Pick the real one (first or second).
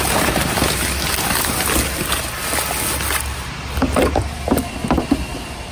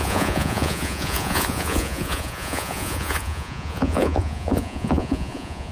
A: first